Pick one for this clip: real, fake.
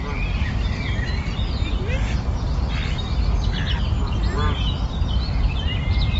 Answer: fake